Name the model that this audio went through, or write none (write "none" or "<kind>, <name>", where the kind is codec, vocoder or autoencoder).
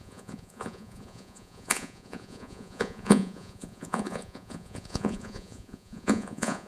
vocoder, Vocos